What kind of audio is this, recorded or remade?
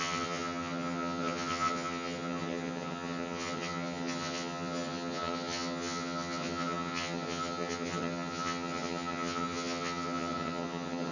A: remade